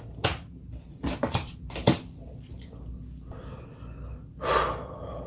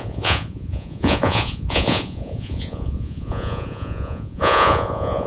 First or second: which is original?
first